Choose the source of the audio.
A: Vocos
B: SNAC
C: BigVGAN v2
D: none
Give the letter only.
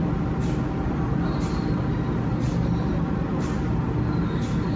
D